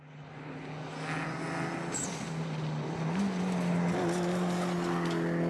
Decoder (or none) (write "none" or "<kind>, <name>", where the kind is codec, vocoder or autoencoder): none